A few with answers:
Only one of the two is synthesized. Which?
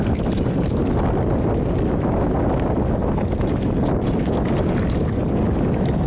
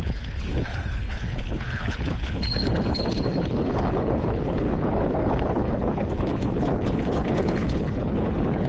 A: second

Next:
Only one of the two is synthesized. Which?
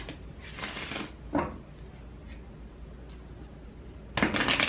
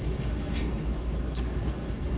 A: second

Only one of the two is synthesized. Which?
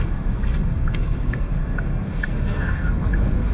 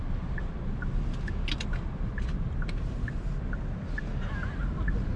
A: first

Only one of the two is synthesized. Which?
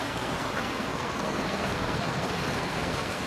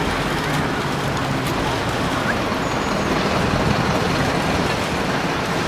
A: first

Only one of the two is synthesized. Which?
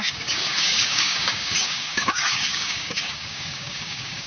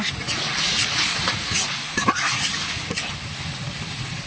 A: first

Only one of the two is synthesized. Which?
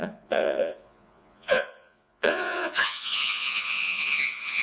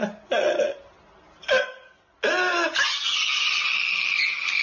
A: first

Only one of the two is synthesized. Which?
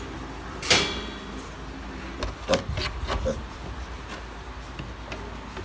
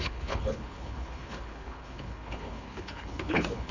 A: second